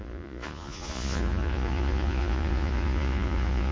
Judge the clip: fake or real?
fake